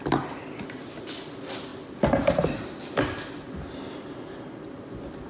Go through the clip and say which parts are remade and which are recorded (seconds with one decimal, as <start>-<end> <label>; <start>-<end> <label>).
0.0-5.3 recorded